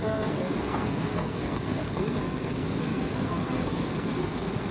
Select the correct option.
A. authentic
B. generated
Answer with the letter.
B